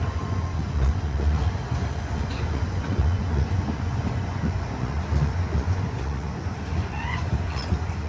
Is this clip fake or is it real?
fake